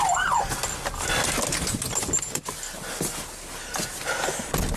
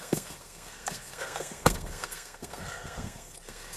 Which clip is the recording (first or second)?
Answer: first